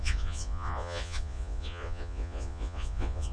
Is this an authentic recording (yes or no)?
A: no